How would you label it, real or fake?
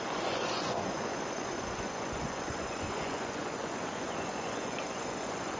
fake